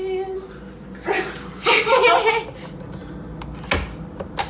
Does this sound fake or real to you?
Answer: real